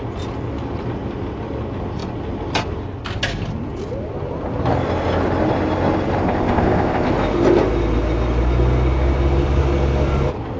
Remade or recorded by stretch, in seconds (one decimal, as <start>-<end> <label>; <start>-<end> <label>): 0.0-6.2 recorded; 6.2-7.1 remade; 7.1-10.6 recorded